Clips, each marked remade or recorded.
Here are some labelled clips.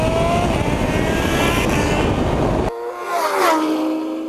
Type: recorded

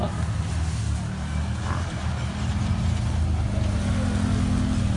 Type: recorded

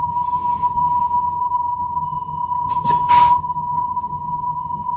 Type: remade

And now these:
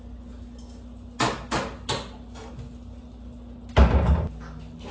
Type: recorded